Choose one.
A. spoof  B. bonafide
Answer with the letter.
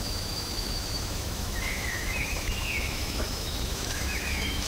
A